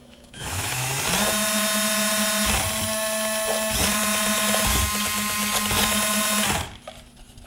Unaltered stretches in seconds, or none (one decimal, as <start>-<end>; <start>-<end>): 0.9-7.5